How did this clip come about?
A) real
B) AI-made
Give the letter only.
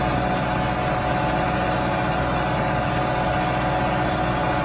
A